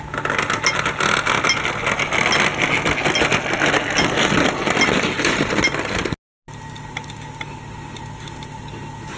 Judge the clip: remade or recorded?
recorded